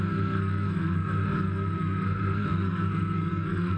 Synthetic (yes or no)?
yes